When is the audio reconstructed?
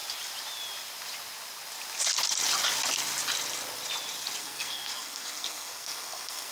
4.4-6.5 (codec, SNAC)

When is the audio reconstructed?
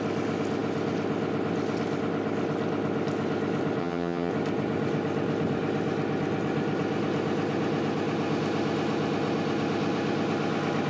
3.8-4.3 (vocoder, HiFi-GAN)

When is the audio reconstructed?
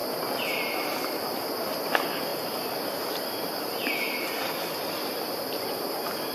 2.3-4.8 (vocoder, BigVGAN v2)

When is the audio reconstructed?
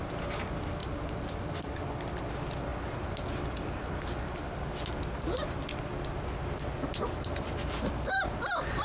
none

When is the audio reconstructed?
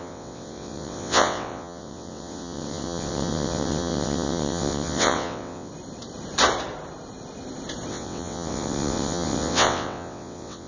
0.0-5.7 (vocoder, WaveNeXt); 7.9-10.7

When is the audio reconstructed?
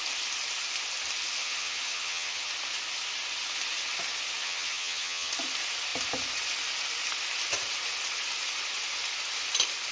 1.4-2.5 (vocoder, HiFi-GAN); 4.4-5.3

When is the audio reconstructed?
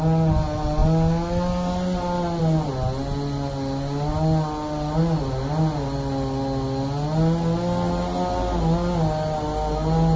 none